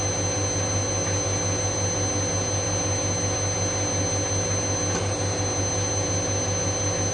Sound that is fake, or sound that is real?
real